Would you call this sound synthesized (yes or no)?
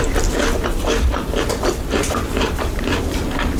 yes